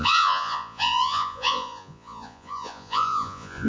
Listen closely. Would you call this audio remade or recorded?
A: remade